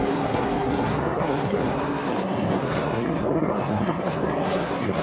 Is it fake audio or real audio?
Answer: fake